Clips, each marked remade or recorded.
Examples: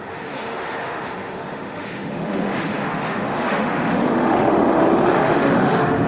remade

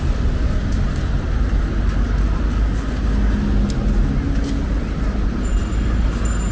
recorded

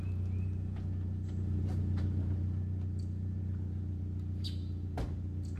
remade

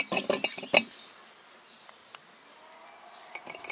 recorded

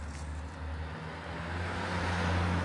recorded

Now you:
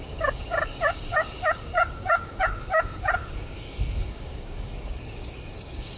remade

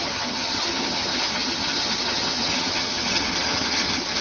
remade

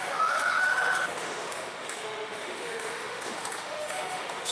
remade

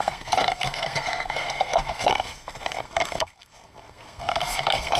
remade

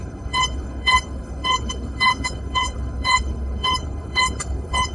remade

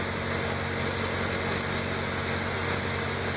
recorded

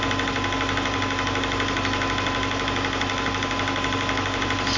recorded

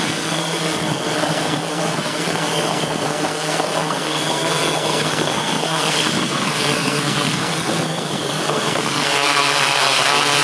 remade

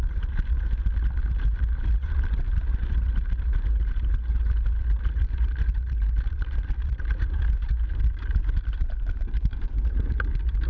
remade